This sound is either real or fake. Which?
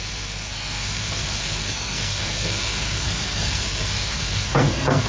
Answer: fake